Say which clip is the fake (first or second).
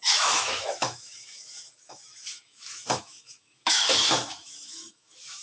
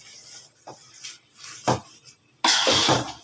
first